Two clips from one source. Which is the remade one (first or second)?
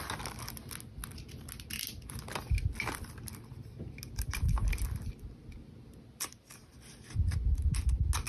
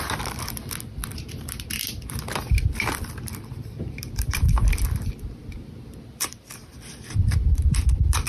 second